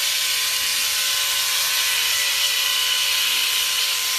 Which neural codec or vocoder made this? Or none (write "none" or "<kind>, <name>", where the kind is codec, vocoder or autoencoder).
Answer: vocoder, BigVGAN v2